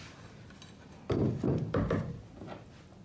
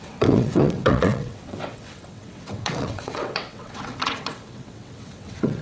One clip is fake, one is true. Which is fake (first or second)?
second